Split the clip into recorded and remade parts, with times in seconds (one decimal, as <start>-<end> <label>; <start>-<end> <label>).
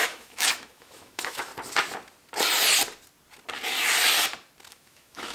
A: 0.0-1.5 remade; 1.5-4.7 recorded; 4.7-5.3 remade